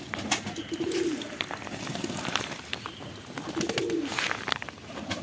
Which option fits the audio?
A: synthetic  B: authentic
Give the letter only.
B